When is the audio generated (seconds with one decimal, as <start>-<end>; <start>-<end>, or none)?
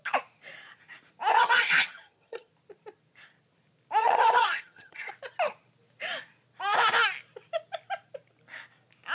1.3-2.5; 4.0-5.1